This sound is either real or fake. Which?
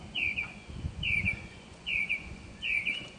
fake